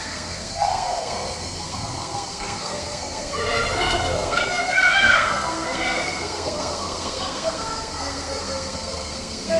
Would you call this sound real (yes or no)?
no